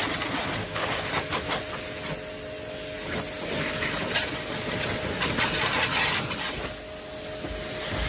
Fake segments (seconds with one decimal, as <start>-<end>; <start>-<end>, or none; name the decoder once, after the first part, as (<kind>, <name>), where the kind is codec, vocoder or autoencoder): 0.6-1.1 (codec, DAC)